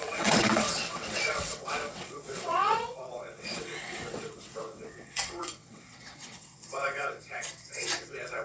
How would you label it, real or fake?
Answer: fake